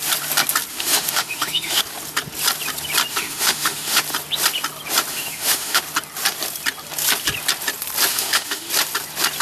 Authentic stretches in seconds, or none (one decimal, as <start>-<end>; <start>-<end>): 0.0-0.7; 1.8-3.1; 4.0-5.1; 5.8-8.1; 8.7-9.4